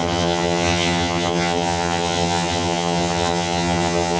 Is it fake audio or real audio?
fake